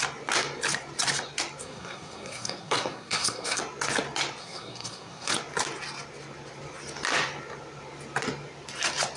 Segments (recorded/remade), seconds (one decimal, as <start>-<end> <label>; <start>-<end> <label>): 0.0-1.6 recorded; 1.6-3.6 remade; 3.6-4.4 recorded; 4.4-5.3 remade; 5.3-9.2 recorded